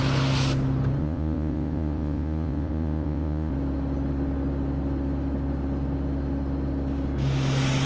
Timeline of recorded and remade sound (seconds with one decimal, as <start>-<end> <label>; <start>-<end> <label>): 0.0-1.0 recorded; 1.0-3.5 remade; 3.5-7.9 recorded

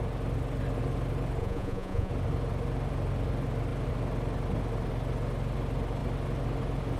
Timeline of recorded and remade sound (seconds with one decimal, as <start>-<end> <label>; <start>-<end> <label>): 0.0-1.4 recorded; 1.4-2.1 remade; 2.1-7.0 recorded